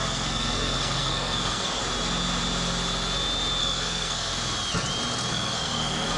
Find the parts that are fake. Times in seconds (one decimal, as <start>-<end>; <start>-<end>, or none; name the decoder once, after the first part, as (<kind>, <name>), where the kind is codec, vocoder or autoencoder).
0.0-1.8 (codec, SNAC); 3.6-4.3; 5.3-6.2